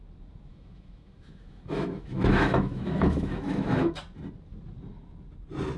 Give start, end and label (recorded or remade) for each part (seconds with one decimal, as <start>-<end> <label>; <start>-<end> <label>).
0.0-0.5 recorded; 0.5-4.0 remade; 4.0-5.8 recorded